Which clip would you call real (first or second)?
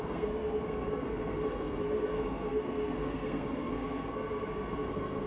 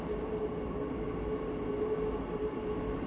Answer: second